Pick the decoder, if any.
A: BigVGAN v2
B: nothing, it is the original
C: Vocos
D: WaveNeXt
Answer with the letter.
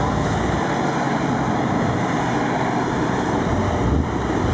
B